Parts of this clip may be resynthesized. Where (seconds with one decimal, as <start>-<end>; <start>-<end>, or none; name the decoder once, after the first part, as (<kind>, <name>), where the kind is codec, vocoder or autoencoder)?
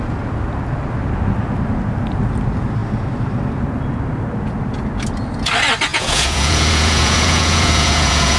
5.9-8.4 (vocoder, Vocos)